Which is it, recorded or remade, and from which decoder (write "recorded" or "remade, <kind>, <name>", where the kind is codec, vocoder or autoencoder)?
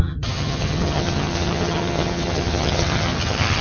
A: remade, vocoder, HiFi-GAN